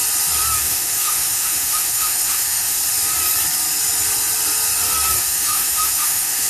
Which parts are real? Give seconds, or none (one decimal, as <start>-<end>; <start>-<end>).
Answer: 0.0-0.6; 2.8-5.2